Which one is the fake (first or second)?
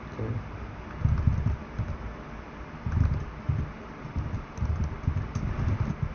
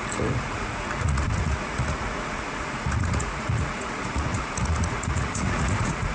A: second